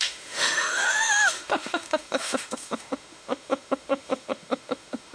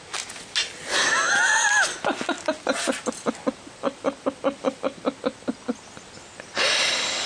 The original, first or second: second